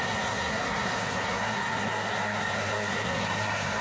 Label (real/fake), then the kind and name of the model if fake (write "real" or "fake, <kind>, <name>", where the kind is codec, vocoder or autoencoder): fake, codec, SNAC